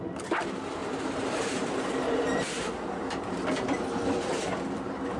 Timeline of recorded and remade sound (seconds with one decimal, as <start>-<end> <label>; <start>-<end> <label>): 0.0-0.8 recorded; 0.8-3.4 remade; 3.4-5.2 recorded